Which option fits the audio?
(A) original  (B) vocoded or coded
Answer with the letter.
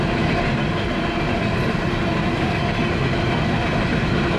A